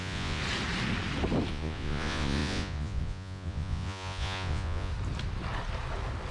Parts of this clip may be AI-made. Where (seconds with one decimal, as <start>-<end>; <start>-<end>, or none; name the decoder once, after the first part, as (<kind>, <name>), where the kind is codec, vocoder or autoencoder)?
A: 0.0-0.4 (vocoder, Vocos); 1.5-4.9